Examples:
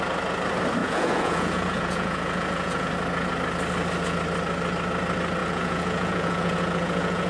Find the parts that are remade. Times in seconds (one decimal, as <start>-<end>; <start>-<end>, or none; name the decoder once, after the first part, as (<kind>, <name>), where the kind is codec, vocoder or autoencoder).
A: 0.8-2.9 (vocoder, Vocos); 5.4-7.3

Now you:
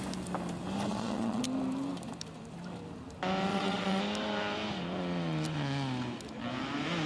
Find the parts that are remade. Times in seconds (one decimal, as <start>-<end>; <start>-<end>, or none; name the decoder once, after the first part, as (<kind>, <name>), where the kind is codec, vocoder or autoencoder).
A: 0.9-1.4 (vocoder, Vocos); 3.5-4.0

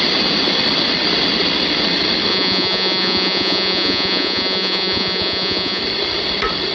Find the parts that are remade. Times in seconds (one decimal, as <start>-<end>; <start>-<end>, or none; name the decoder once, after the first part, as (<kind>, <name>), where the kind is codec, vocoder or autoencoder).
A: 2.3-5.8 (vocoder, Vocos)

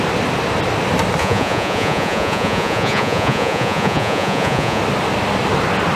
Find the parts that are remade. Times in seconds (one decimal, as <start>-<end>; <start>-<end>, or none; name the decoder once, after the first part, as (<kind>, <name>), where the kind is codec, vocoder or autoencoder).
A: 1.2-4.8 (vocoder, Vocos)